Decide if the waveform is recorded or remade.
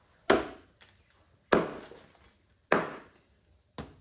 recorded